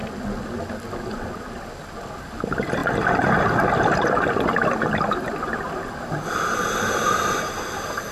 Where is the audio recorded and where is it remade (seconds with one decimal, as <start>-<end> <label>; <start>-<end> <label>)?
0.0-1.1 recorded; 1.1-1.6 remade; 1.6-8.1 recorded